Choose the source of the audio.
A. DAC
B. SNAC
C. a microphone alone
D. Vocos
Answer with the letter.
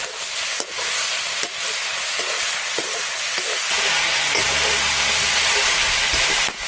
C